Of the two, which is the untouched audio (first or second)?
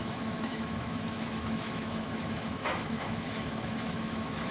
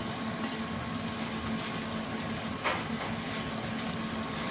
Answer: second